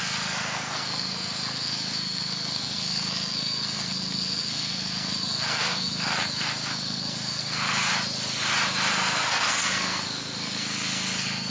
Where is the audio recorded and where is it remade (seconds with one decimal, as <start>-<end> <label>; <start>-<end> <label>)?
0.0-7.9 remade; 7.9-8.9 recorded; 8.9-11.5 remade